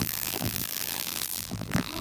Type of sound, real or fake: fake